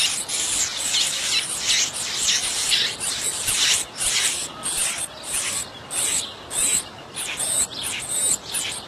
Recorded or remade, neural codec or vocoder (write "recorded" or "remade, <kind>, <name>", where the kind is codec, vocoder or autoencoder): recorded